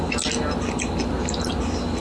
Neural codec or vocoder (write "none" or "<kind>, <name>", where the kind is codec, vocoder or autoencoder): none